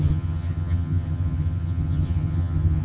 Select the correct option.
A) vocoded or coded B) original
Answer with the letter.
A